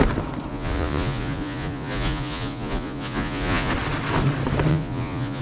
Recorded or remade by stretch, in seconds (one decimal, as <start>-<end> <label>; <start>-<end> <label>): 0.0-0.5 recorded; 0.5-3.7 remade; 3.7-4.7 recorded; 4.7-5.4 remade